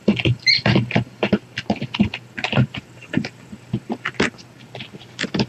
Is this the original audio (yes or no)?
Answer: yes